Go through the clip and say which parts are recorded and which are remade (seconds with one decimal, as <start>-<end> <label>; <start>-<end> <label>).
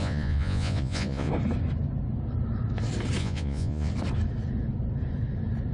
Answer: 0.0-1.3 remade; 1.3-3.2 recorded; 3.2-3.9 remade; 3.9-5.7 recorded